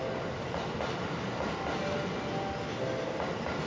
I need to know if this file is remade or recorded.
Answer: recorded